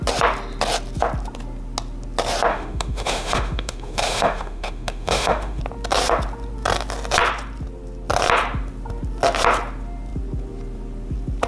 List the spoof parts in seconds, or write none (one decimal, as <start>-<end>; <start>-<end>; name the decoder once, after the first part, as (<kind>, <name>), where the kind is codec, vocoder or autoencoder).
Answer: 2.5-5.6 (autoencoder, DAC-VAE)